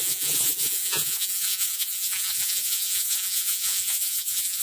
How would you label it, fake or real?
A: fake